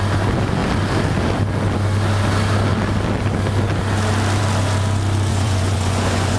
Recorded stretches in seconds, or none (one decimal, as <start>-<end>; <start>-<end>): 0.0-5.3